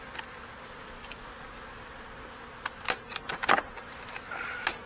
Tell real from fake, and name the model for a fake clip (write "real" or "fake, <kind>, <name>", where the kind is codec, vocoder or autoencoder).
real